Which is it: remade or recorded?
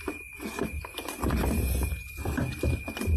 recorded